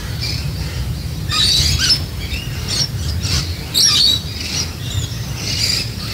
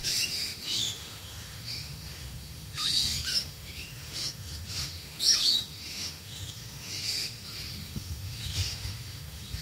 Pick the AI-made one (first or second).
second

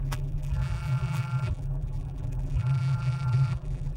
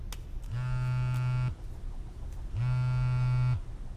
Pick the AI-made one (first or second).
first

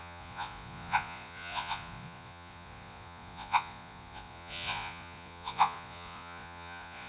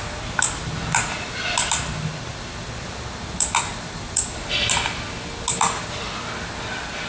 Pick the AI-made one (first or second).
first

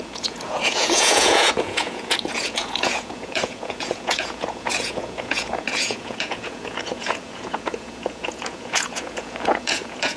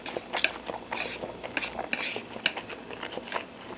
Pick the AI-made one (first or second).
first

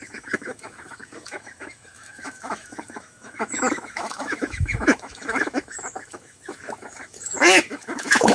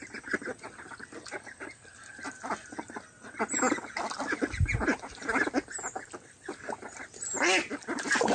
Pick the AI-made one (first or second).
first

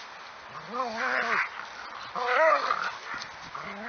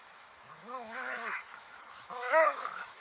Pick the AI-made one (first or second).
second